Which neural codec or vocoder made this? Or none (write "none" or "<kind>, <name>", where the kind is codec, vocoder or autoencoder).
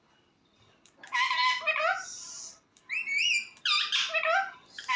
none